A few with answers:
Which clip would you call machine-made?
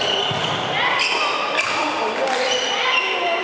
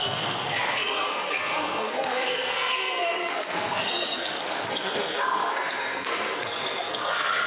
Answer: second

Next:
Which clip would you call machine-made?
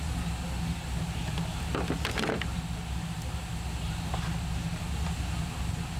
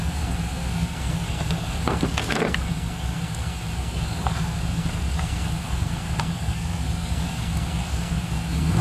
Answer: second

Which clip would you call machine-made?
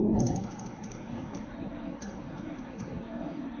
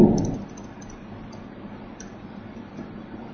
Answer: first